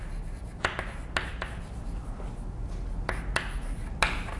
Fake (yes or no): no